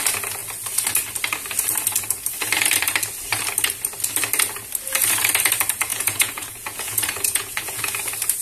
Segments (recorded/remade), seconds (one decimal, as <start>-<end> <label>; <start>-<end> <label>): 0.0-5.9 recorded; 5.9-7.8 remade; 7.8-8.4 recorded